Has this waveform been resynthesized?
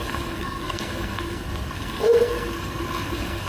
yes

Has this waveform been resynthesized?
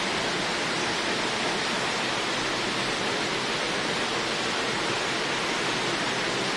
no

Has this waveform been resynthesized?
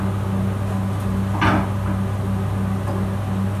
no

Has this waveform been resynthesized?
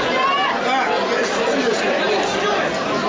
no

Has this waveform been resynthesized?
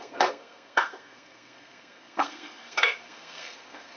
yes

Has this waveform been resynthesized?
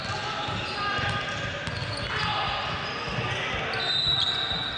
no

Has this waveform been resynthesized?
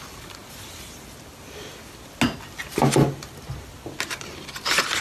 no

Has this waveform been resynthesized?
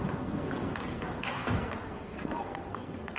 yes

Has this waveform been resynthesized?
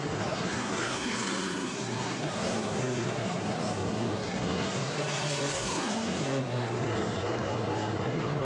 yes